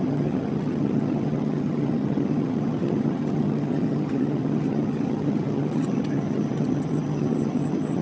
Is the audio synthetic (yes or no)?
yes